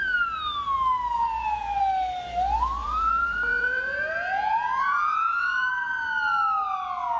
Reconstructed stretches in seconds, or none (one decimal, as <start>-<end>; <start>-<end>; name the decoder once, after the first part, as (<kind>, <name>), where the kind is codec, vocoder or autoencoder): 1.2-1.8 (vocoder, Vocos); 2.8-5.6